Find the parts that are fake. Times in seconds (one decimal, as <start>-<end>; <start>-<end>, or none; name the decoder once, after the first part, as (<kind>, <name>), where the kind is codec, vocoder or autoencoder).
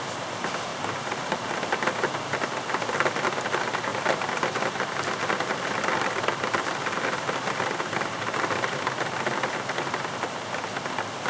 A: 0.7-1.6 (vocoder, BigVGAN v2)